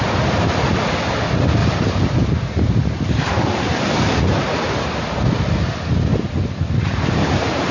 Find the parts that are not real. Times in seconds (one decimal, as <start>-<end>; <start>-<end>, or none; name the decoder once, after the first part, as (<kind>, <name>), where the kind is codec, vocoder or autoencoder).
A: 1.6-2.3 (vocoder, BigVGAN v2); 6.1-7.7